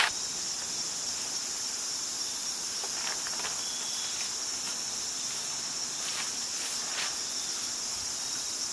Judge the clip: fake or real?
real